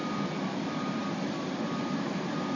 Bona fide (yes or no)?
yes